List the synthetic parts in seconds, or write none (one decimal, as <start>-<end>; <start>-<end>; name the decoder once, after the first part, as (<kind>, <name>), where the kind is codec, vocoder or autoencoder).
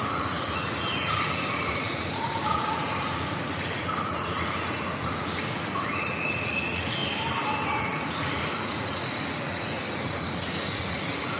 0.0-7.0 (vocoder, Vocos); 7.8-11.4